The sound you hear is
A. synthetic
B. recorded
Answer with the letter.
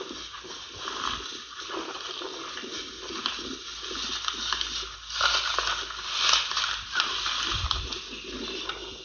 B